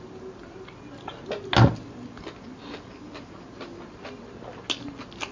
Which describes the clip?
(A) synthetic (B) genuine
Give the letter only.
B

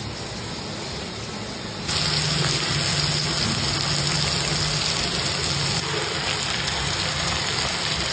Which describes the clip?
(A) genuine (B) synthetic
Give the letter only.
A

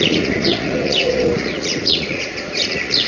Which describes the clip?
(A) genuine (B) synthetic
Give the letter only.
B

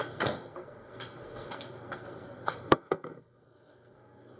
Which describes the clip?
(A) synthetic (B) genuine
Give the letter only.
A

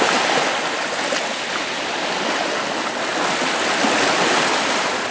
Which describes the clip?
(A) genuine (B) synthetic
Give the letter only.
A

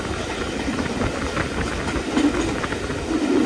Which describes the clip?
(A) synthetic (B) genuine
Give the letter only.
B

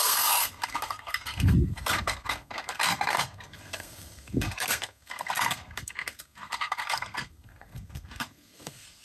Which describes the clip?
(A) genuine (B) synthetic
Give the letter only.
B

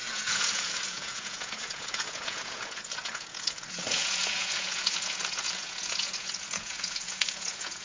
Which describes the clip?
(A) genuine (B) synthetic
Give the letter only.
B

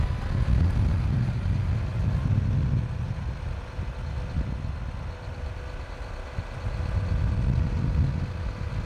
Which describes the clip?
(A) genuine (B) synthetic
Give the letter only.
A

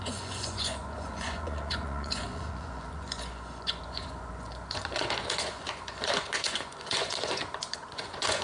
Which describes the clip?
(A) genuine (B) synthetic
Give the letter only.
B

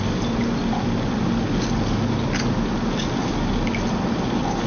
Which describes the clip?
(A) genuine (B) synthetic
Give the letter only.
A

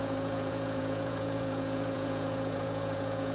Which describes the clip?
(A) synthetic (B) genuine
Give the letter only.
A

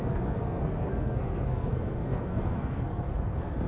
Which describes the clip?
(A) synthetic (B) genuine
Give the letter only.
A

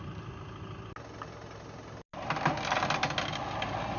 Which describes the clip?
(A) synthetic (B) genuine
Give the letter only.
B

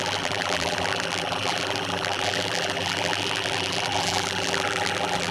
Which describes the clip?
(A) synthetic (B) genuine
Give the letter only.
A